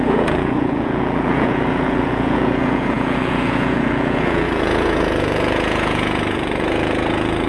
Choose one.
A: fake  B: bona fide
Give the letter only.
A